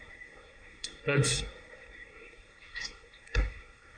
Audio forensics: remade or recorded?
remade